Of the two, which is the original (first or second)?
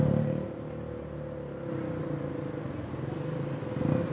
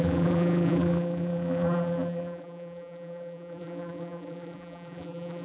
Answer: first